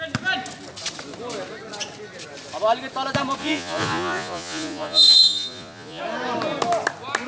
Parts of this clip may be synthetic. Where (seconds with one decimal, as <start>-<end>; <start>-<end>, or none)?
3.4-6.0